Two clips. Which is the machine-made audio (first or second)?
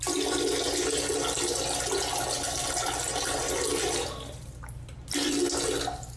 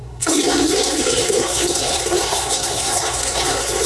second